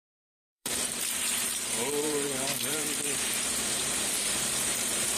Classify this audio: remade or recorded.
remade